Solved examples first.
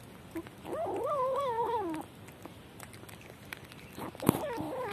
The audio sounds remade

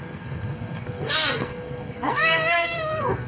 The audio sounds remade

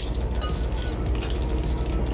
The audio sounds recorded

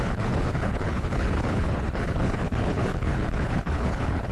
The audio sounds remade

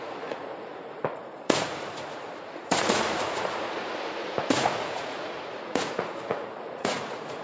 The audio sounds remade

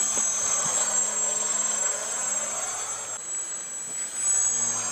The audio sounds recorded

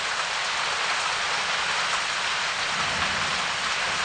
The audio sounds recorded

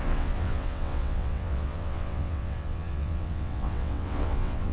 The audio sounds remade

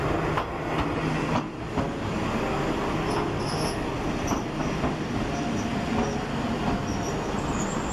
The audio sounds recorded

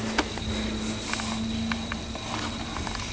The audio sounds recorded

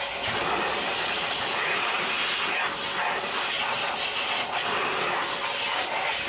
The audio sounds recorded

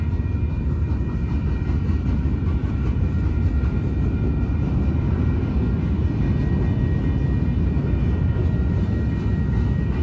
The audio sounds recorded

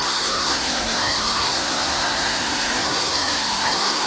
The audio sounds remade